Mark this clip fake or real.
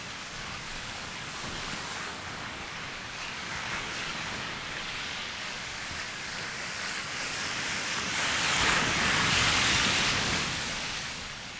fake